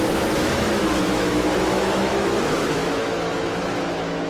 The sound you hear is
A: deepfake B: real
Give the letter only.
A